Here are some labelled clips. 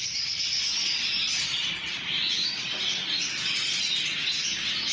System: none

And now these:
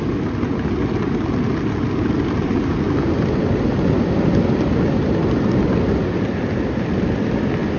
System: none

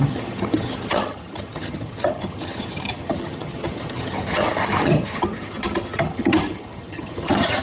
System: vocoder, HiFi-GAN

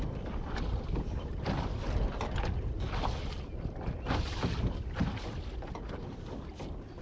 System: none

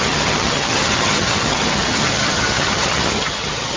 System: vocoder, HiFi-GAN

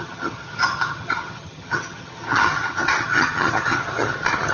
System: vocoder, HiFi-GAN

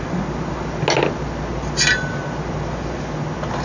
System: none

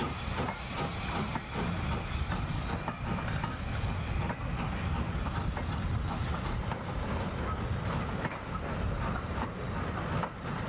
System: none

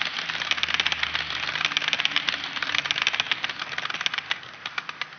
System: none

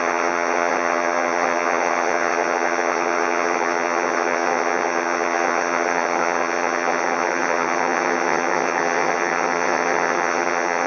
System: vocoder, HiFi-GAN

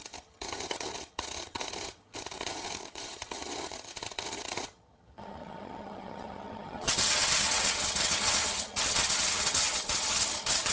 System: vocoder, HiFi-GAN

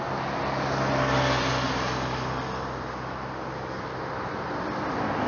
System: none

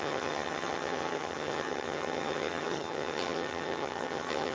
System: vocoder, HiFi-GAN